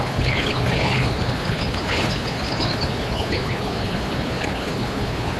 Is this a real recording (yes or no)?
no